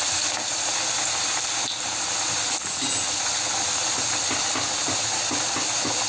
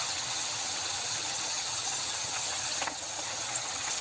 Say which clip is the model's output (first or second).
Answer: second